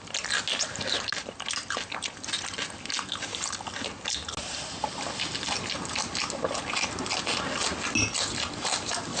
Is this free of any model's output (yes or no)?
yes